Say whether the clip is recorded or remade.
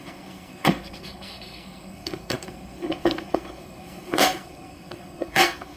remade